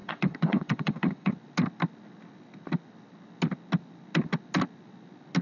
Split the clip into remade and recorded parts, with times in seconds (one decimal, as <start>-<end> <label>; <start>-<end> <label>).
0.0-1.3 remade; 1.3-5.4 recorded